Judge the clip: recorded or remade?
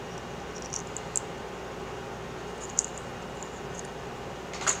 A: recorded